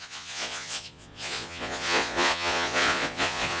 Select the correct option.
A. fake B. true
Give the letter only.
A